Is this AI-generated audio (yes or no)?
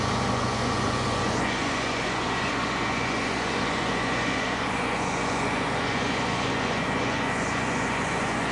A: yes